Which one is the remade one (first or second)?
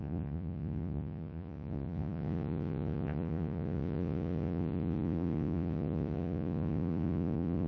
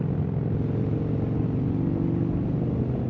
first